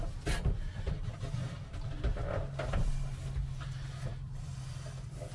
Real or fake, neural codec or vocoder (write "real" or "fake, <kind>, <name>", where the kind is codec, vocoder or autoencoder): real